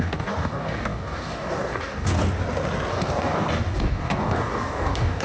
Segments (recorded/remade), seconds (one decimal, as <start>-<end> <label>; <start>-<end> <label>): 0.0-2.2 remade; 2.2-2.9 recorded; 2.9-5.2 remade